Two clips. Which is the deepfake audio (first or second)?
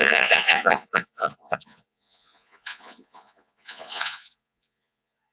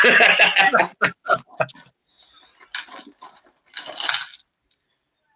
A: first